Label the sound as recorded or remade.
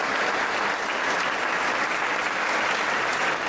recorded